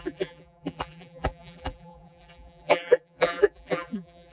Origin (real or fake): fake